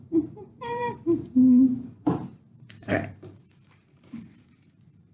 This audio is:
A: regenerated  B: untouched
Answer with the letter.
A